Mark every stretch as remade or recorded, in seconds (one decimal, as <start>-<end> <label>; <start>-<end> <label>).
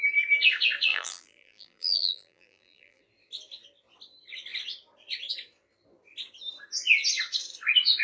0.0-0.9 recorded; 0.9-3.0 remade; 3.0-8.0 recorded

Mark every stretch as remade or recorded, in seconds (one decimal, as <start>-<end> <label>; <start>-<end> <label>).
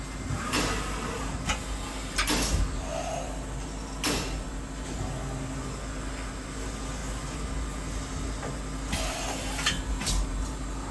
0.0-10.9 recorded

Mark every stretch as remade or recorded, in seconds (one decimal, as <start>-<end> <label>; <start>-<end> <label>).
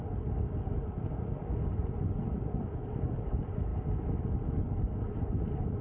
0.0-5.8 recorded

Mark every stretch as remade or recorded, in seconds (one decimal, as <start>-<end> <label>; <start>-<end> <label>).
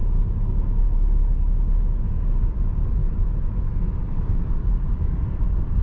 0.0-0.8 remade; 0.8-3.0 recorded; 3.0-4.0 remade; 4.0-5.8 recorded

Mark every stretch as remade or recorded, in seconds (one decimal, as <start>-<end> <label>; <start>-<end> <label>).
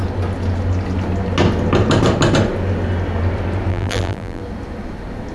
0.0-3.7 recorded; 3.7-4.4 remade; 4.4-5.3 recorded